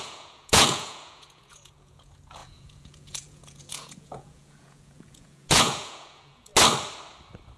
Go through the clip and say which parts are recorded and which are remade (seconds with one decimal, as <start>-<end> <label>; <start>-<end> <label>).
0.0-6.5 remade; 6.5-7.6 recorded